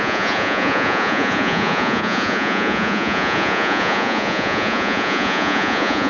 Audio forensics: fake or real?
fake